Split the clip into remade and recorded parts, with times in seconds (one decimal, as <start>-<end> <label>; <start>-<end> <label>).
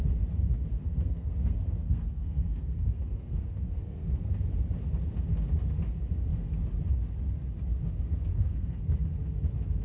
0.0-0.7 recorded; 0.7-4.3 remade; 4.3-8.3 recorded; 8.3-8.8 remade; 8.8-9.8 recorded